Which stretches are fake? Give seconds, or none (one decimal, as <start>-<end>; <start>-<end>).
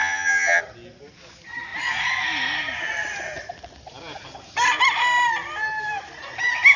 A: 0.0-0.6